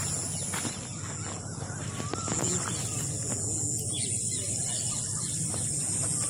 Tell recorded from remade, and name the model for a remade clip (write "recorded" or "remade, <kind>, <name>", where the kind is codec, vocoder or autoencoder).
recorded